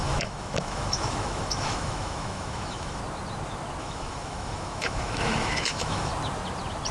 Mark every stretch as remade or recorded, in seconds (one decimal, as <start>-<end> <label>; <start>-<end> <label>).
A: 0.0-3.0 remade; 3.0-3.8 recorded; 3.8-6.1 remade; 6.1-6.9 recorded